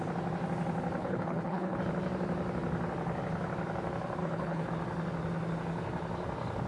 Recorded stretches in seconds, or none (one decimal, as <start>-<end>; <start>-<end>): 0.0-1.0; 1.8-4.2; 4.7-6.7